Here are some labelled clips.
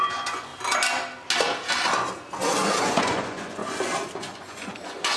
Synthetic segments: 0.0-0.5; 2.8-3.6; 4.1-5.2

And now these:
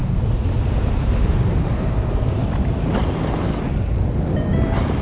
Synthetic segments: none

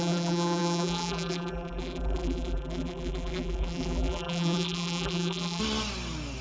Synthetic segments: 0.0-5.6

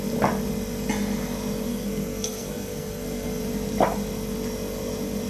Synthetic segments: 1.7-3.4